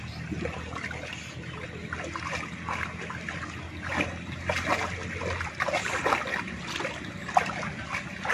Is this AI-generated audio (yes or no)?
no